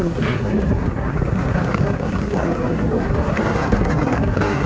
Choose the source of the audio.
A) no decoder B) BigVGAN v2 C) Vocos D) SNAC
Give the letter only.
D